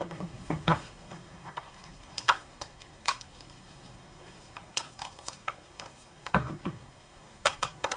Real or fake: fake